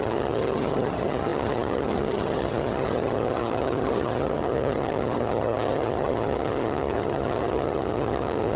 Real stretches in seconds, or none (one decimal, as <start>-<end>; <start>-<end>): none